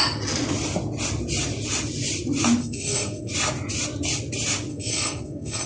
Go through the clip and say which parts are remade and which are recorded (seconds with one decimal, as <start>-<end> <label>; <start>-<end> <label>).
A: 0.0-2.6 recorded; 2.6-3.3 remade; 3.3-4.7 recorded; 4.7-5.7 remade